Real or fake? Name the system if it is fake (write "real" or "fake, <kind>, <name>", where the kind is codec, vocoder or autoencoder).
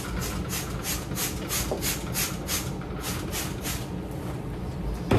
real